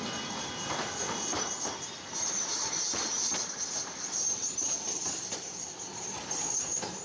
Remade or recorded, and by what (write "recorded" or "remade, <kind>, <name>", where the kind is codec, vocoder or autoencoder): remade, vocoder, BigVGAN v2